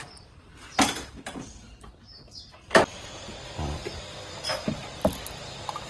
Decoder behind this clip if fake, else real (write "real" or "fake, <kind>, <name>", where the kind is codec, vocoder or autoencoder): fake, vocoder, BigVGAN v2